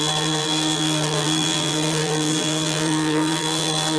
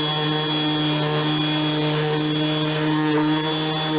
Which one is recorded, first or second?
second